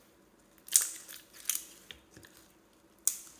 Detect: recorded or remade recorded